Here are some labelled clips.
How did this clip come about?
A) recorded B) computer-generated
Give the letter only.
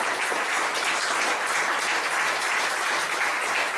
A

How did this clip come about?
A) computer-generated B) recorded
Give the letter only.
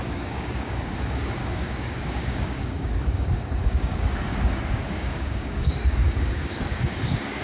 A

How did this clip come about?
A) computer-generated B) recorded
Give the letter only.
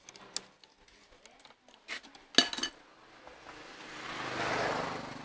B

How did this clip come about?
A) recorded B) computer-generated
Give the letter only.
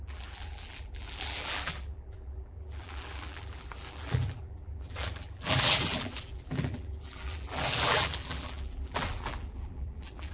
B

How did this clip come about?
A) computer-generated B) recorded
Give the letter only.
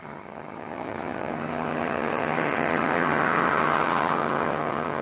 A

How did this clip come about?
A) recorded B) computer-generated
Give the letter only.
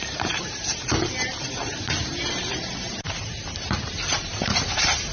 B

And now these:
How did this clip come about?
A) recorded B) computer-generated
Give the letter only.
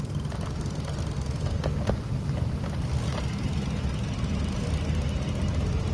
A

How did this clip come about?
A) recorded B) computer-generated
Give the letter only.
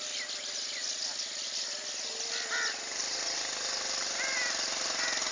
A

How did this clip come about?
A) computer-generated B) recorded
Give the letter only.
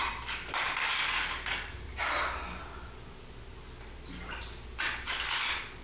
B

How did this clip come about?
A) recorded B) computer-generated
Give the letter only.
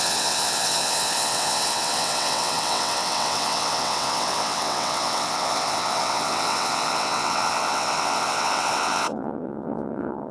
B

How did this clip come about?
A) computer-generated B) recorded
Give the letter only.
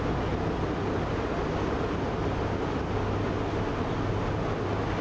B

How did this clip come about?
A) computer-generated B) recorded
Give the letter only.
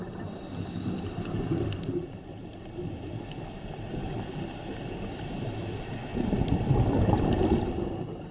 B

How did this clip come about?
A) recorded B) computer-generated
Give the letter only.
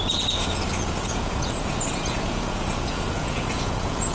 B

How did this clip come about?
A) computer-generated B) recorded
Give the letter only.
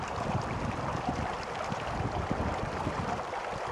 B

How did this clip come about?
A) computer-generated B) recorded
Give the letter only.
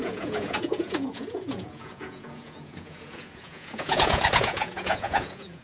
A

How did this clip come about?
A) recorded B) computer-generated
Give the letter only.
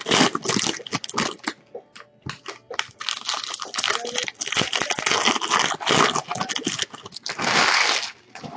A